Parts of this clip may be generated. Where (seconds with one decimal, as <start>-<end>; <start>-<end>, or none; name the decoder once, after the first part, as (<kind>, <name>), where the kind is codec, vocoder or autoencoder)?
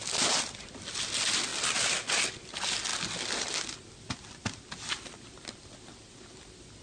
none